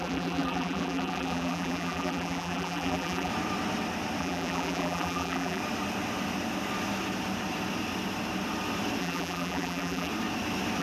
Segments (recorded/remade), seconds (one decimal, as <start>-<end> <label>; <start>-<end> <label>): 0.0-3.3 remade; 3.3-4.2 recorded; 4.2-5.6 remade; 5.6-9.0 recorded; 9.0-10.1 remade; 10.1-10.8 recorded

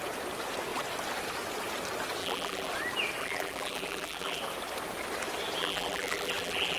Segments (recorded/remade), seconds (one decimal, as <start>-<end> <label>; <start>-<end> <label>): 0.0-2.2 recorded; 2.2-2.7 remade; 2.7-3.2 recorded; 3.2-4.4 remade; 4.4-5.6 recorded; 5.6-6.8 remade